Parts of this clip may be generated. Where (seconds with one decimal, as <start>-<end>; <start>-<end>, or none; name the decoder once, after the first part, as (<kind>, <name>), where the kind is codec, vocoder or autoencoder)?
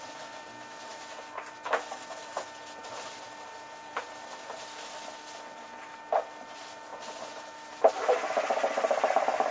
none